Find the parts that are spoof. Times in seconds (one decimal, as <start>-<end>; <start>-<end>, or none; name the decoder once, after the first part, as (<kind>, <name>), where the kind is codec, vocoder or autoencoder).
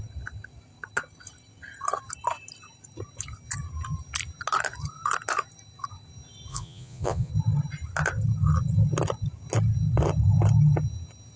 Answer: 6.5-7.3 (vocoder, Vocos)